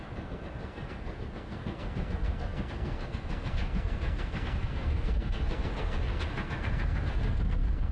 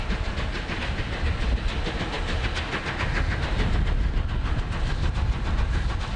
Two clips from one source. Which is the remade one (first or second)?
first